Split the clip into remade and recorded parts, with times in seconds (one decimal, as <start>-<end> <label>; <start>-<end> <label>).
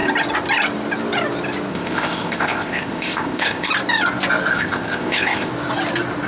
0.0-1.7 recorded; 1.7-3.7 remade; 3.7-4.5 recorded; 4.5-5.5 remade; 5.5-6.3 recorded